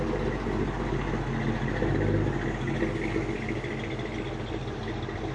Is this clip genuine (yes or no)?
yes